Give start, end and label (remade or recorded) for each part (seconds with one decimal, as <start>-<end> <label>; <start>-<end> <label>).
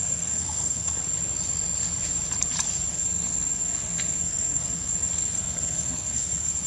0.0-1.0 remade; 1.0-2.9 recorded; 2.9-6.7 remade